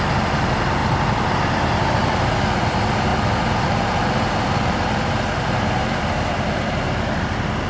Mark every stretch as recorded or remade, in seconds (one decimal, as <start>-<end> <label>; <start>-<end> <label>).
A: 0.0-3.1 remade; 3.1-4.0 recorded; 4.0-7.7 remade